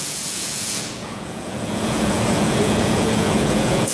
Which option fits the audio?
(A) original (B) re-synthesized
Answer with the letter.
B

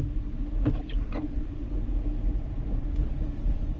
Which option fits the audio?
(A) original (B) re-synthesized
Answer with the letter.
A